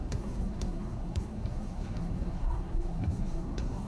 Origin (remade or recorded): remade